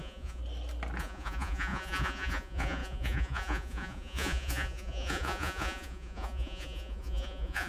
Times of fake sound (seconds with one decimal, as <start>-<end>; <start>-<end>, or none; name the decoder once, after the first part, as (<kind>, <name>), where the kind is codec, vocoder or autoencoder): 0.0-0.4 (vocoder, Vocos); 1.0-7.7